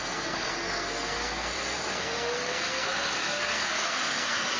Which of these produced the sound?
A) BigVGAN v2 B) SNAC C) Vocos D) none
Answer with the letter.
B